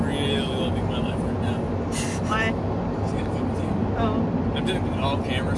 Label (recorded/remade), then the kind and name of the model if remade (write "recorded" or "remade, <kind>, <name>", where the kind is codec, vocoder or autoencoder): recorded